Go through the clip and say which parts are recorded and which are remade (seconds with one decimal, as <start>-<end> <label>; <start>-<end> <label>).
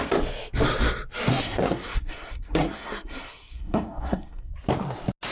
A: 0.0-1.3 recorded; 1.3-4.5 remade; 4.5-5.3 recorded